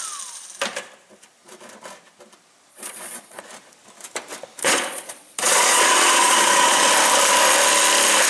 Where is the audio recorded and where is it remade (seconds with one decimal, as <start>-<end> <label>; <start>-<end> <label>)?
0.0-2.7 recorded; 2.7-3.4 remade; 3.4-4.6 recorded; 4.6-6.9 remade; 6.9-8.3 recorded